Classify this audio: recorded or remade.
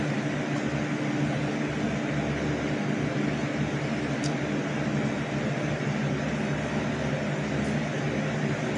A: recorded